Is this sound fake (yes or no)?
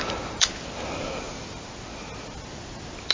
no